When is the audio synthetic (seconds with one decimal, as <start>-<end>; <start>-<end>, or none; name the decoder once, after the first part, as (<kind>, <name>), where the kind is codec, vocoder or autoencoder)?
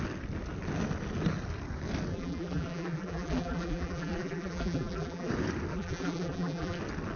2.1-5.3 (vocoder, BigVGAN v2); 5.7-6.8